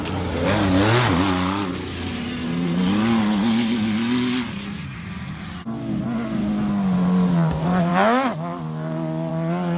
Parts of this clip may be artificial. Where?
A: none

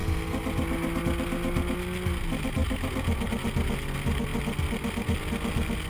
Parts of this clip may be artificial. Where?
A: none

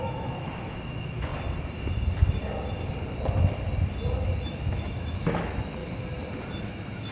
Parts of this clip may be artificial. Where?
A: 0.0-1.3 (autoencoder, DAC-VAE); 4.5-5.8; 6.6-7.1

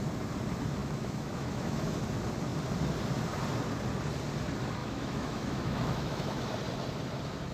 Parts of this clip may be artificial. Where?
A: 0.8-2.0 (autoencoder, DAC-VAE); 4.8-6.5

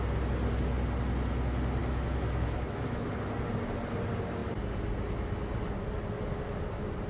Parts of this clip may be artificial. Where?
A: 1.8-3.1 (autoencoder, DAC-VAE)

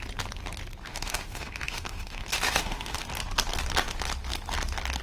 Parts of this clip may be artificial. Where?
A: 0.8-3.0 (autoencoder, DAC-VAE)